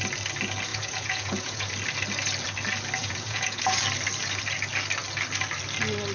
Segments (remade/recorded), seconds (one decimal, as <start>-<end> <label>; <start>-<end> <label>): 0.0-0.7 recorded; 0.7-1.7 remade; 1.7-3.0 recorded; 3.0-3.8 remade; 3.8-6.1 recorded

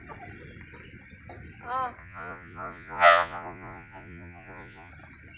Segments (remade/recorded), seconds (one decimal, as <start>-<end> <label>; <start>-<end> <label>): 0.0-2.0 recorded; 2.0-4.9 remade; 4.9-5.4 recorded

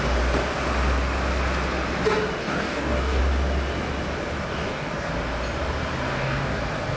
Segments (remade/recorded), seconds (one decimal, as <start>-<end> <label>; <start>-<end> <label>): 0.0-2.4 recorded; 2.4-3.2 remade; 3.2-4.5 recorded; 4.5-5.1 remade; 5.1-6.1 recorded; 6.1-6.6 remade; 6.6-7.0 recorded

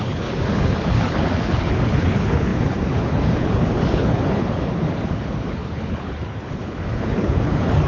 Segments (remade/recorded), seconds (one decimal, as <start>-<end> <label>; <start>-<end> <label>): 0.0-7.9 remade